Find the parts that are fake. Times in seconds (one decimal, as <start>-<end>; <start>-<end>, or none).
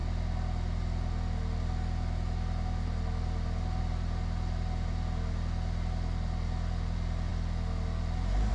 none